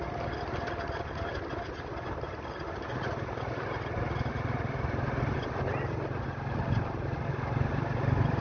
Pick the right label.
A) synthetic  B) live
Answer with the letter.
B